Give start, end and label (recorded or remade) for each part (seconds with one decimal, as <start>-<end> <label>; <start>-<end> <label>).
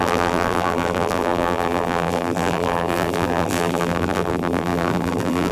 0.0-5.5 remade